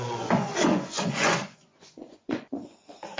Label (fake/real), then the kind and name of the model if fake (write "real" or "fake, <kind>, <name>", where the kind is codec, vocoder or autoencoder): fake, vocoder, Vocos